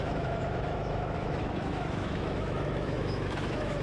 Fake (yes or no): yes